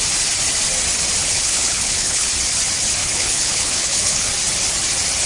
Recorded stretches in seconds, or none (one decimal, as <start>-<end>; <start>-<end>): 0.0-1.2; 2.3-3.0; 4.3-5.3